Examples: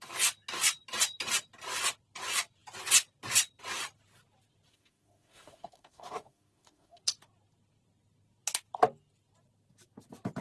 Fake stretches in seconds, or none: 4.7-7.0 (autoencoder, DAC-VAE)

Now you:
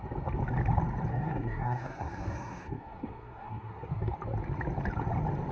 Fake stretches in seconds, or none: 1.1-3.9 (codec, SNAC)

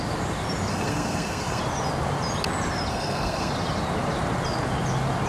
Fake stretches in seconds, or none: 0.7-1.6 (codec, SNAC); 2.9-3.5

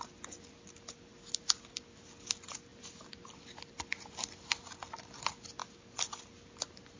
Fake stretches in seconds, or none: none

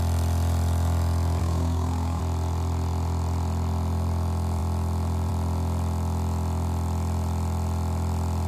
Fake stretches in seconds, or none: 1.4-2.2 (codec, SNAC)

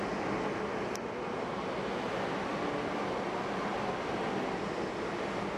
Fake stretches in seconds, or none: none

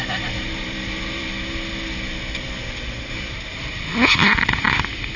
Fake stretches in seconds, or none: 0.0-1.3 (vocoder, BigVGAN v2); 3.1-3.9

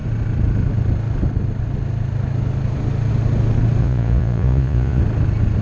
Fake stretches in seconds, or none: 3.8-5.0 (vocoder, Vocos)